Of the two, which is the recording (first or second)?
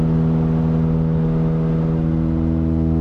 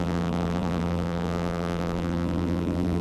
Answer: first